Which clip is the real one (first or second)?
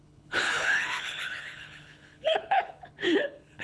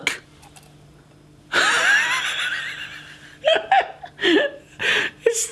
second